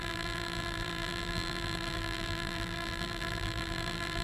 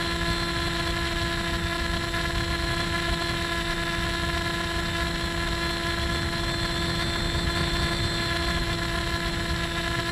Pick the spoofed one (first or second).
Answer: first